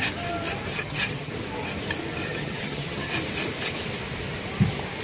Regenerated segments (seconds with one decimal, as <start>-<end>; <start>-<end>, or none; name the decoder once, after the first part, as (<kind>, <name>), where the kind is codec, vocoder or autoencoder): 0.7-1.3 (vocoder, HiFi-GAN); 2.3-3.1